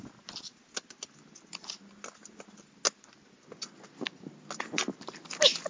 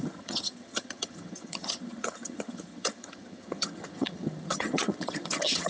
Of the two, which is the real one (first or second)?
first